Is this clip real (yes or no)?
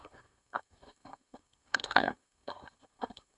no